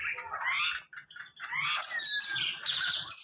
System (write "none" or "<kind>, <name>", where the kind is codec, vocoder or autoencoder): none